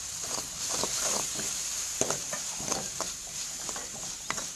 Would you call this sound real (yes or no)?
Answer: no